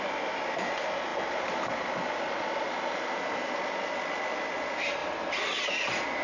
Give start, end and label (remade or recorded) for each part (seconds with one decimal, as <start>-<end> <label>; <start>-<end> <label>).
0.0-6.2 recorded